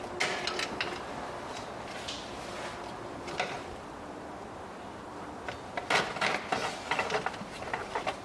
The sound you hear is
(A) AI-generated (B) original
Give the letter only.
B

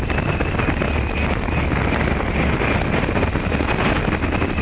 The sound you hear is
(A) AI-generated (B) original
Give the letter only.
B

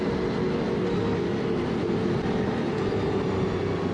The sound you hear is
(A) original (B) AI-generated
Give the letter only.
A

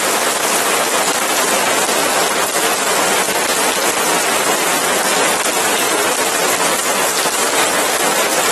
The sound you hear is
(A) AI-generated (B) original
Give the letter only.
B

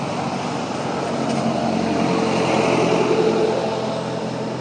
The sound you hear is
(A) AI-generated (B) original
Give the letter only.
B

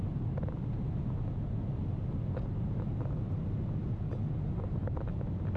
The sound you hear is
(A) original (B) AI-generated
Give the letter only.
A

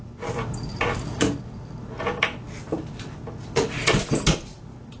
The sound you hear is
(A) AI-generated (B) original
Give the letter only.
B